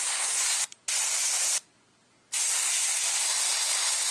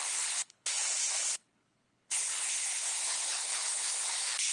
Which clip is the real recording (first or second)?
first